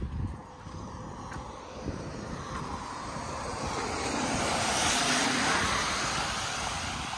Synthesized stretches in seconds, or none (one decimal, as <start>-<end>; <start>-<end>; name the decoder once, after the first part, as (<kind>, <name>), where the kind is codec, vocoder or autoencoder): none